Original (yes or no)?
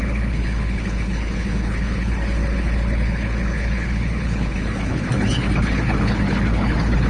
no